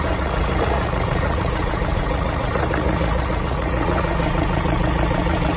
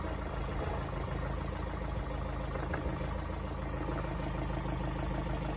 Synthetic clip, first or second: first